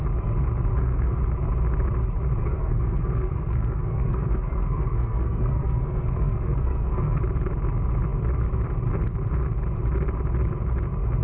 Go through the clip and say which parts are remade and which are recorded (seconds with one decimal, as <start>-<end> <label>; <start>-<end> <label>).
0.0-0.7 recorded; 0.7-1.2 remade; 1.2-2.4 recorded; 2.4-7.2 remade; 7.2-11.2 recorded